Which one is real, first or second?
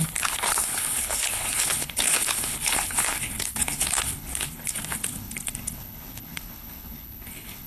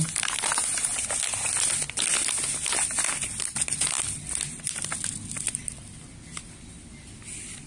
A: second